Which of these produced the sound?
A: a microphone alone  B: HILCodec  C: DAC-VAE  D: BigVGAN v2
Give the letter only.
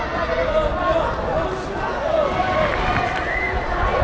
A